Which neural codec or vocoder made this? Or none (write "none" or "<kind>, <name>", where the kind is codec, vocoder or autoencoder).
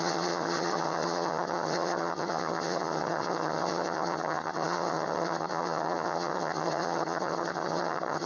vocoder, HiFi-GAN